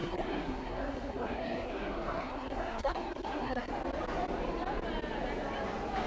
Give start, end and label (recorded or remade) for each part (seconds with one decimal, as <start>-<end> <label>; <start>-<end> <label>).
0.0-3.7 remade; 3.7-6.1 recorded